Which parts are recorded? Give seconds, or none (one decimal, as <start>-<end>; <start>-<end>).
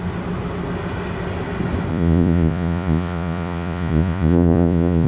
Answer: 0.0-1.9